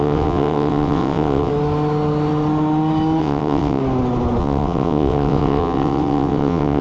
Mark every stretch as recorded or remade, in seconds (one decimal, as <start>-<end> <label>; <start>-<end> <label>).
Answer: 0.0-1.5 remade; 1.5-3.2 recorded; 3.2-3.8 remade; 3.8-4.4 recorded; 4.4-6.8 remade